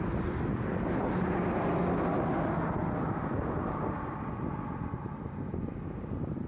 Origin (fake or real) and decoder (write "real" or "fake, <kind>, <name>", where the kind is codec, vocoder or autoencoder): real